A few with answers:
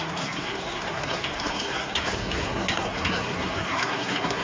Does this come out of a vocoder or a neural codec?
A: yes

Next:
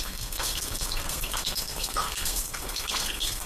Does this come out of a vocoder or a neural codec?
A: yes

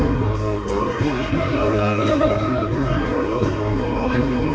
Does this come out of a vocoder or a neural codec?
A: yes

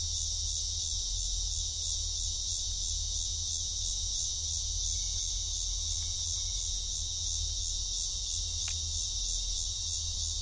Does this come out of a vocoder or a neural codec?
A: no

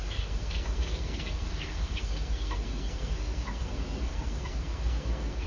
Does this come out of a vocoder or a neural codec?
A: yes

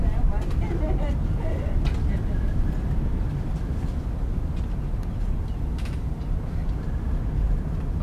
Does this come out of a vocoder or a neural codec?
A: no